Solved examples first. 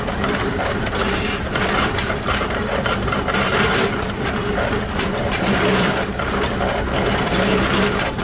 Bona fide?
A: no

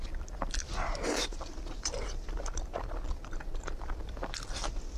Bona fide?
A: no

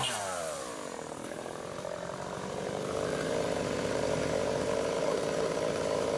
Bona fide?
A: no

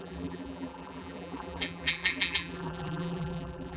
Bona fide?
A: no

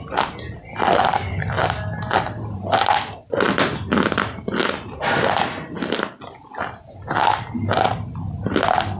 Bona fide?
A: yes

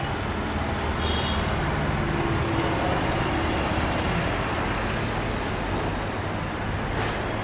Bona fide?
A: yes